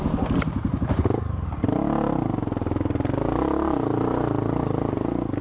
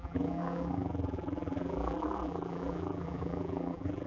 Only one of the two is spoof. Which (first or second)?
second